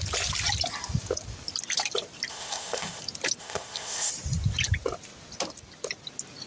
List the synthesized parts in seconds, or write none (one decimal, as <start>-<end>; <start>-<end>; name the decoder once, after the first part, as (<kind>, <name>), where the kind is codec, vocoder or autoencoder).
2.3-3.0 (codec, ZipCodec); 3.4-4.1